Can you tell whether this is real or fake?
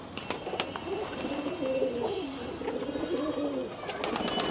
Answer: real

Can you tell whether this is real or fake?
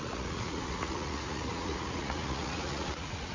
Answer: fake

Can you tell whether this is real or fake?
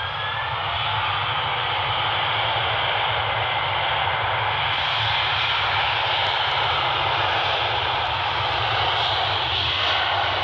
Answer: real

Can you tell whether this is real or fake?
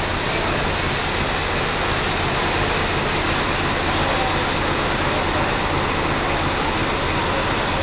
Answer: real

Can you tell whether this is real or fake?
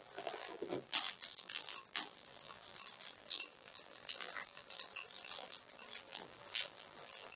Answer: fake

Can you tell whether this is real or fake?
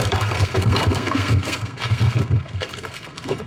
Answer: fake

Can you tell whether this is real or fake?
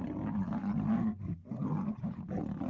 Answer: real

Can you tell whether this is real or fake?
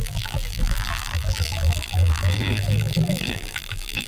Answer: fake